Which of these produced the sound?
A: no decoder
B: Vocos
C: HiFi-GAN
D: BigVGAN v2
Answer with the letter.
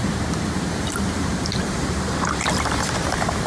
D